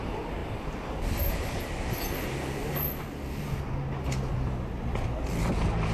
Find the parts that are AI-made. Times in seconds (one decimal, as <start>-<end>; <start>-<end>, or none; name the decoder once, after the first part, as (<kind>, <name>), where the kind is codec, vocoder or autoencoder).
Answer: none